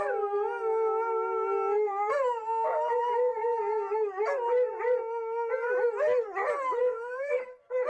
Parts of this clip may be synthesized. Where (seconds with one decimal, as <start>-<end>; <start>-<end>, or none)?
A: 6.8-7.4

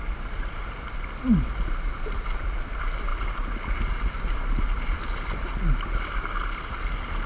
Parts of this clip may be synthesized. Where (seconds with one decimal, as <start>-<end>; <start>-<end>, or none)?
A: none